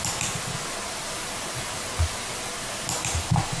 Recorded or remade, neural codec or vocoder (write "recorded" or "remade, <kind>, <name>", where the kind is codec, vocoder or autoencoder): recorded